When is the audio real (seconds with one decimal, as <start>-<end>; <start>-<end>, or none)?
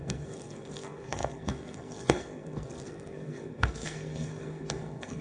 none